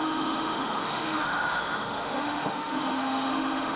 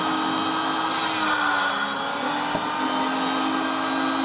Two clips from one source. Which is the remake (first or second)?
first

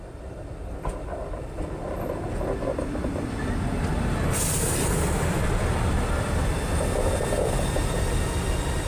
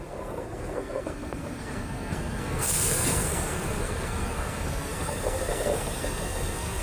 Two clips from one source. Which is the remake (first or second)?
second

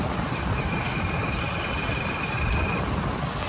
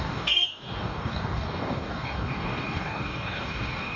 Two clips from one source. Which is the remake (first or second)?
second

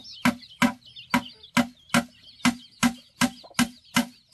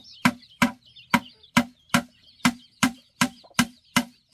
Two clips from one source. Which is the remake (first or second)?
second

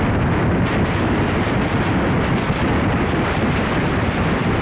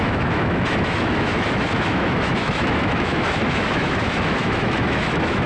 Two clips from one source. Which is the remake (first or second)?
second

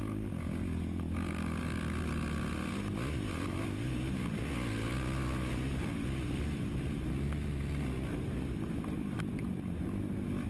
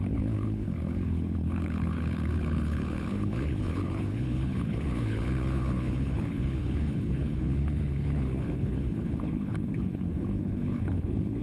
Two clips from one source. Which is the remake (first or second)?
second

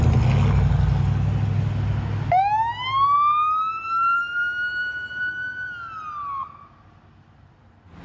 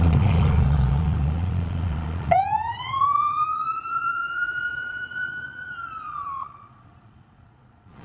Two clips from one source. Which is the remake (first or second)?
second